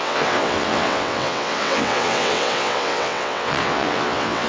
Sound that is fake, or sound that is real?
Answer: fake